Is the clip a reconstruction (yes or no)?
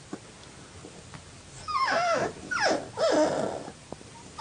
no